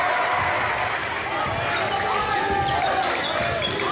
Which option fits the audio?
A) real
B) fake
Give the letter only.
A